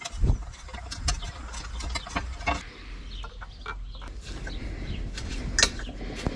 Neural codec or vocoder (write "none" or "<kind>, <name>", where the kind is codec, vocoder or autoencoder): none